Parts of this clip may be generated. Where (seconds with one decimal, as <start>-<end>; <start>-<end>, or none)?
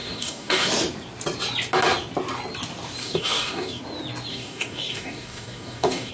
0.0-0.7; 3.0-3.8; 4.3-6.1